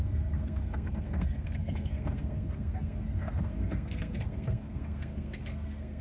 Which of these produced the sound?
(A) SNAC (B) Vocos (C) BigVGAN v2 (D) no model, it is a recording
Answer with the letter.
A